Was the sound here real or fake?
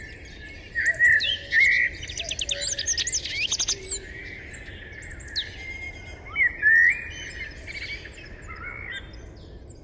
real